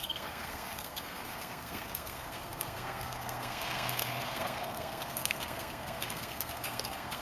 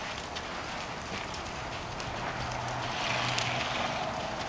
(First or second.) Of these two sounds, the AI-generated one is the first